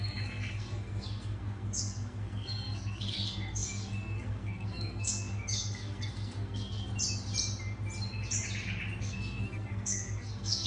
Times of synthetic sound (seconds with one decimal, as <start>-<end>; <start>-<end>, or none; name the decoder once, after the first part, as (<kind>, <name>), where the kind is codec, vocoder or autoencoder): 0.0-6.9 (codec, SNAC); 9.0-10.7